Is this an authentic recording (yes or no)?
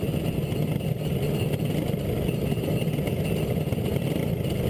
yes